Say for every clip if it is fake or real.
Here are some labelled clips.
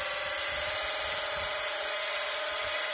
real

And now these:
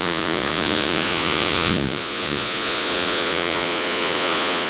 fake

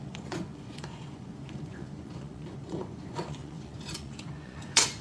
fake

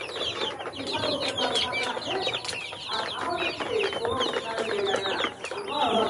real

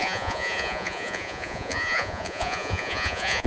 fake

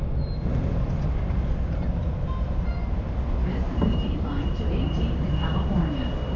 real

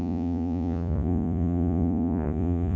fake